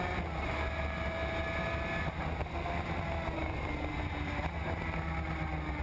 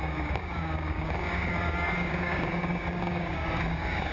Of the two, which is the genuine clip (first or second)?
first